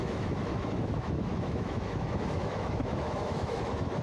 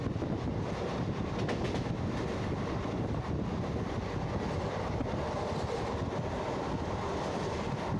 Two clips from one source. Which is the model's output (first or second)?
first